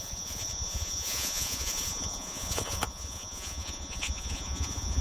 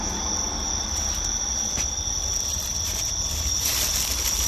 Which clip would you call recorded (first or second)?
second